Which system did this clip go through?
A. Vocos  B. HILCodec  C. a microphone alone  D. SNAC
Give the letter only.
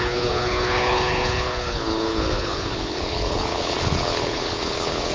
B